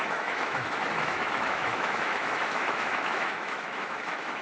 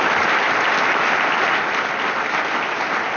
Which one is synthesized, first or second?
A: first